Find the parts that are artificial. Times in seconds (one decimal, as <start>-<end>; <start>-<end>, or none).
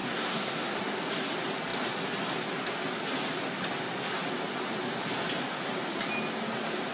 0.0-0.8